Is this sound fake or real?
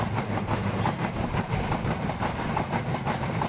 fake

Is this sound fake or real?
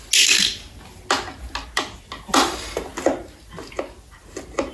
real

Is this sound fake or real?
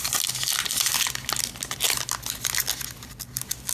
real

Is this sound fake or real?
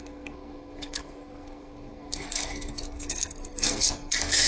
fake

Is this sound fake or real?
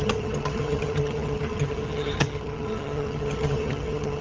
fake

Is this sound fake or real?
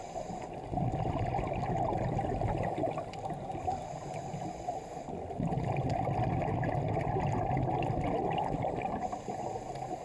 real